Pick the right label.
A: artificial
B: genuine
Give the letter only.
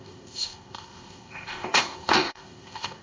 A